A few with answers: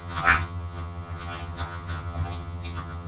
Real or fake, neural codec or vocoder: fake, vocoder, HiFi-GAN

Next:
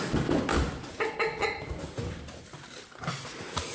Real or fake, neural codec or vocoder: real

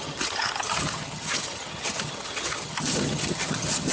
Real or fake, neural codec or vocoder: fake, vocoder, HiFi-GAN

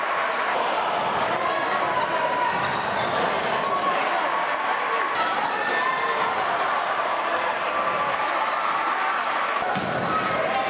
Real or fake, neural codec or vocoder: real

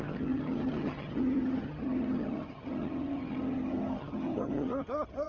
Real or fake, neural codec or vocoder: fake, vocoder, HiFi-GAN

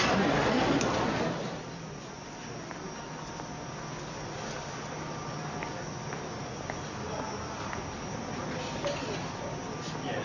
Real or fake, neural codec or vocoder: real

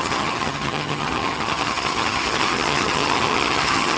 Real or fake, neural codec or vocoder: fake, vocoder, HiFi-GAN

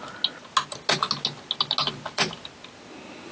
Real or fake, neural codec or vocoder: real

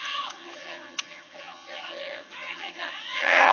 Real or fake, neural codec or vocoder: fake, vocoder, HiFi-GAN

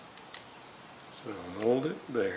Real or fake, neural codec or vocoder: real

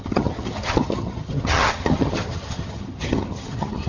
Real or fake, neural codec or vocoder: fake, vocoder, HiFi-GAN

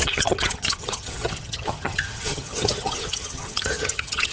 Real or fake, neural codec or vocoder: fake, vocoder, HiFi-GAN